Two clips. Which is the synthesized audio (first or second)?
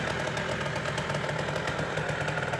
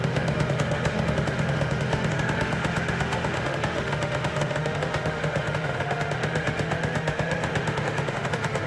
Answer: second